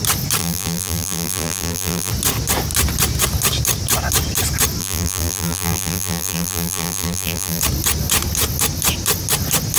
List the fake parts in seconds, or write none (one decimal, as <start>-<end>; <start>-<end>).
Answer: 0.4-2.1; 4.8-7.6

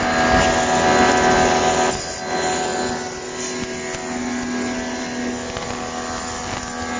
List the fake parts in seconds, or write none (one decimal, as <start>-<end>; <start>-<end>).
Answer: none